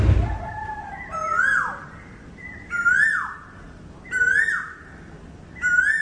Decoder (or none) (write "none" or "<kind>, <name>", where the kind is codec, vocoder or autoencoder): vocoder, BigVGAN v2